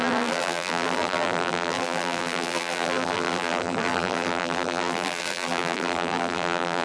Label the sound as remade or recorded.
remade